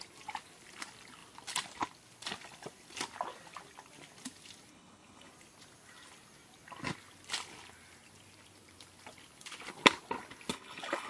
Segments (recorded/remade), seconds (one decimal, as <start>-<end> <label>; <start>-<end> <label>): 0.0-4.7 recorded; 4.7-5.3 remade; 5.3-10.5 recorded; 10.5-11.1 remade